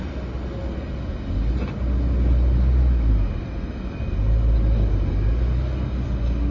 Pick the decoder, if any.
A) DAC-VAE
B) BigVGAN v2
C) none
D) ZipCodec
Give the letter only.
C